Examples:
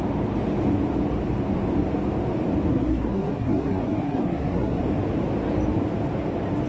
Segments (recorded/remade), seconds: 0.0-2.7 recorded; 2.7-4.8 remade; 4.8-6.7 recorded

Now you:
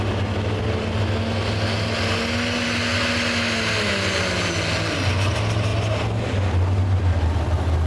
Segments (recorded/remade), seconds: 0.0-7.9 recorded

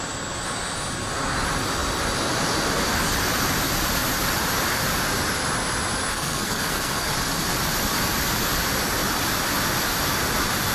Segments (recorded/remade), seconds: 0.0-6.1 recorded; 6.1-7.1 remade; 7.1-10.7 recorded

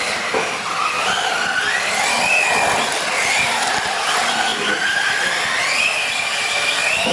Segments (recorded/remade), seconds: 0.0-7.1 recorded

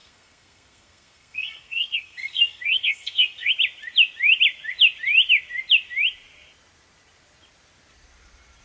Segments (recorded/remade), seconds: 0.0-3.5 remade; 3.5-8.6 recorded

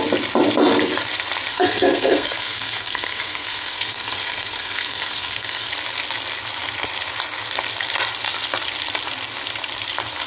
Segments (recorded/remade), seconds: 0.0-1.5 recorded; 1.5-5.7 remade; 5.7-10.3 recorded

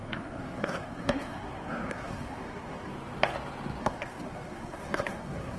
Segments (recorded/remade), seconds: 0.0-2.9 remade; 2.9-3.8 recorded; 3.8-5.6 remade